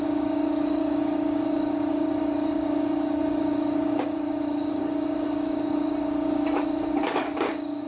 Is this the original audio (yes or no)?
no